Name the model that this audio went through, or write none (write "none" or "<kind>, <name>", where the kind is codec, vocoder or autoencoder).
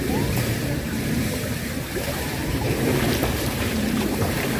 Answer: vocoder, BigVGAN v2